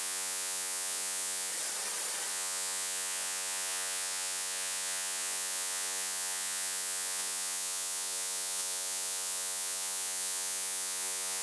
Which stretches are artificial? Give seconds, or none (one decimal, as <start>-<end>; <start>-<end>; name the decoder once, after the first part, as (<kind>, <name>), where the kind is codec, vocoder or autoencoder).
0.0-1.5 (vocoder, Vocos); 2.3-11.4